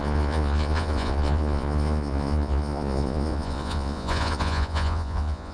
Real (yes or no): no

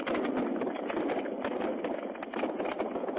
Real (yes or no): yes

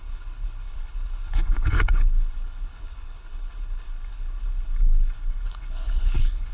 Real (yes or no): no